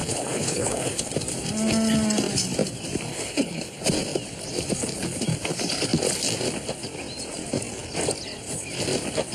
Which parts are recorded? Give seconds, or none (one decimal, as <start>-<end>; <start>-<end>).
1.1-3.1; 3.8-9.3